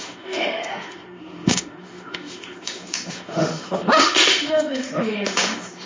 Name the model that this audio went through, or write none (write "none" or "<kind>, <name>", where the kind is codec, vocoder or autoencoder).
autoencoder, DAC-VAE